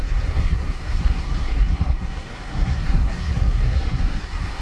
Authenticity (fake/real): fake